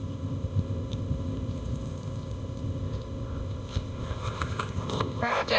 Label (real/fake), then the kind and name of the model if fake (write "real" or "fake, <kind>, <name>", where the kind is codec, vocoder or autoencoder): fake, codec, ZipCodec